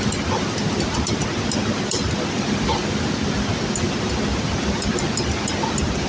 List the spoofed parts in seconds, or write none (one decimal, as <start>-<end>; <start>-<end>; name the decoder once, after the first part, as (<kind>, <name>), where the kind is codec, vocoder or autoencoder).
none

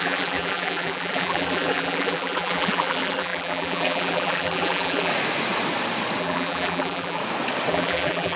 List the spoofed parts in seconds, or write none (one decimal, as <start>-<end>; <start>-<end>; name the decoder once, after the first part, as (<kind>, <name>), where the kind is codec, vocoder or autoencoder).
0.0-5.1 (vocoder, BigVGAN v2); 6.2-7.2; 7.7-8.4

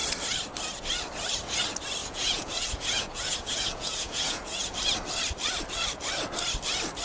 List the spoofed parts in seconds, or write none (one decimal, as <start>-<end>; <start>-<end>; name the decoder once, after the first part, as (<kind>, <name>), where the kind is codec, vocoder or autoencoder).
2.0-4.7 (vocoder, Vocos)

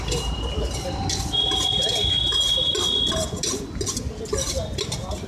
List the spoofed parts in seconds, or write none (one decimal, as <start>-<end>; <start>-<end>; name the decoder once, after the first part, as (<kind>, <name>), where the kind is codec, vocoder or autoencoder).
none

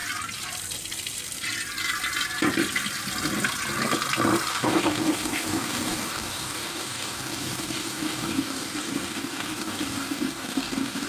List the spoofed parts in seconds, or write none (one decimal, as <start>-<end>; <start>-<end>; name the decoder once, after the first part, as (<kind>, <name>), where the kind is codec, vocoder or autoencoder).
4.5-11.1 (codec, DAC)

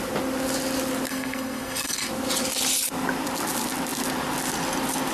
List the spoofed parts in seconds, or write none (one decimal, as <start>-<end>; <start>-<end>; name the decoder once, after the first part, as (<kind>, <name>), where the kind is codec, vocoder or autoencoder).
1.1-2.1 (codec, SNAC)

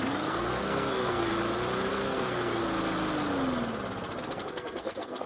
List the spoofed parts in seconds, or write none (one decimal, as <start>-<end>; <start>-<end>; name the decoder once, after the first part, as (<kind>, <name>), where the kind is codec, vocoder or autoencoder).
0.0-1.3 (codec, SNAC); 1.9-2.6; 4.2-5.3